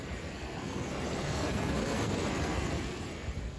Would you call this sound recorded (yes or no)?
no